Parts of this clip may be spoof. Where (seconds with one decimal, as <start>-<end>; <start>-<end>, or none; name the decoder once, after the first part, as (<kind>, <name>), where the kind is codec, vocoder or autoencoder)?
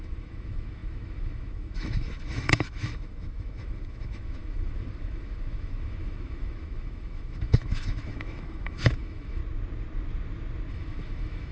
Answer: 0.0-9.4 (autoencoder, DAC-VAE); 10.7-11.5